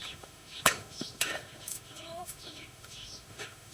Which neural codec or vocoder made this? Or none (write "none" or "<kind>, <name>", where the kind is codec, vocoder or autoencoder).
autoencoder, DAC-VAE